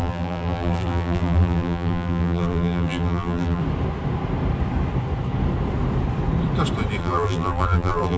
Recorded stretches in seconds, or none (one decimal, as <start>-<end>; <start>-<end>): 3.6-7.0